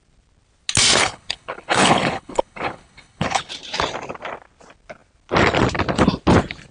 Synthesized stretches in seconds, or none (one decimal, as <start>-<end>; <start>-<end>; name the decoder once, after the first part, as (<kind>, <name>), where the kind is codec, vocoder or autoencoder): 1.0-3.5 (codec, HILCodec)